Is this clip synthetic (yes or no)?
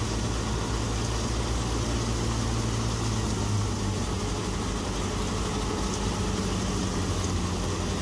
no